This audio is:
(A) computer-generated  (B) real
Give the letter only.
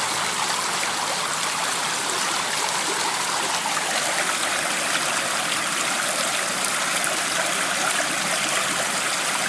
B